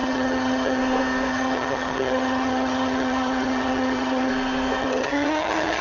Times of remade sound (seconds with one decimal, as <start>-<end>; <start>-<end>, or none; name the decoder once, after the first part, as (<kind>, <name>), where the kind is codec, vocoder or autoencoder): 0.0-0.8 (vocoder, HiFi-GAN); 1.3-4.3; 4.8-5.8